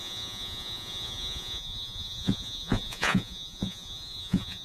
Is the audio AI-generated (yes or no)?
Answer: yes